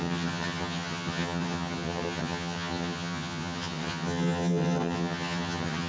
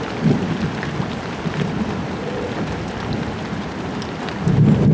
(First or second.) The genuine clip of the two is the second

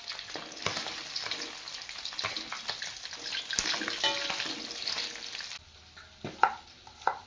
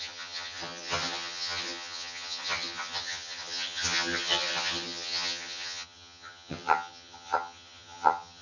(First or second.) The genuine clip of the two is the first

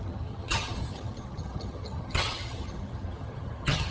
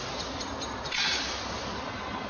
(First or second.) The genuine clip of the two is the second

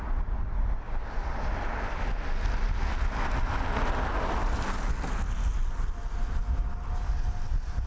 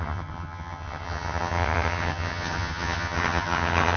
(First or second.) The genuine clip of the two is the first